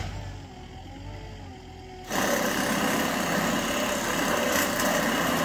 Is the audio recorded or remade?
recorded